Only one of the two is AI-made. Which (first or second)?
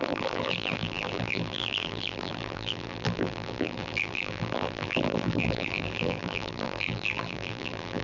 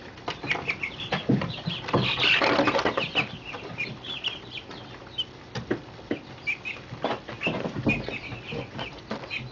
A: first